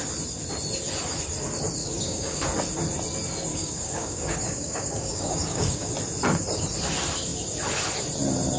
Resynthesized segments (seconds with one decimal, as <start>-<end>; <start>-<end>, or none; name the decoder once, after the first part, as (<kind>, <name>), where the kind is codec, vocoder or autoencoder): 1.8-2.4 (codec, DAC); 3.5-5.9